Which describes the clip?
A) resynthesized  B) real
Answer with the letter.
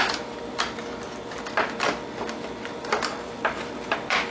B